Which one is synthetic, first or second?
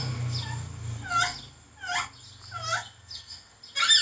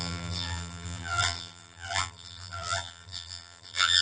second